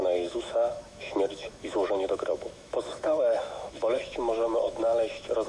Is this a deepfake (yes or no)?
yes